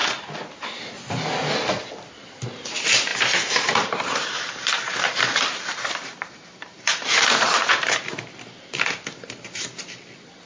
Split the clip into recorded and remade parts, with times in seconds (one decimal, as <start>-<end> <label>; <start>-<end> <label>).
0.0-0.8 remade; 0.8-3.1 recorded; 3.1-8.3 remade; 8.3-10.5 recorded